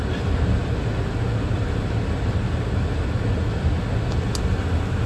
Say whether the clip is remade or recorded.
recorded